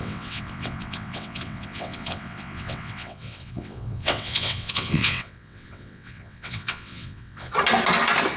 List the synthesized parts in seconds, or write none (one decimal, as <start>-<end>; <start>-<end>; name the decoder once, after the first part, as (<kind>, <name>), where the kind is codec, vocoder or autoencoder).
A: 0.0-7.5 (vocoder, WaveNeXt)